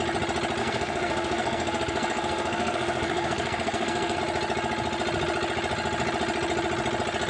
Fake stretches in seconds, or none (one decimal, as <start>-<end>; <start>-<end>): 0.6-4.2